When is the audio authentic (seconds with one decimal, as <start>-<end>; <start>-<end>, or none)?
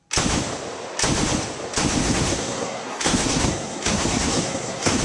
0.0-2.0